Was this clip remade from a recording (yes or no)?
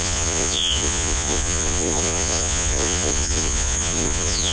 yes